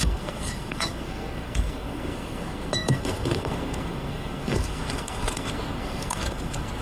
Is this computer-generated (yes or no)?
yes